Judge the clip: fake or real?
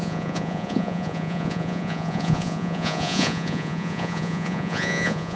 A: fake